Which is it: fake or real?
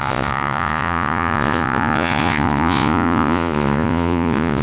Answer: fake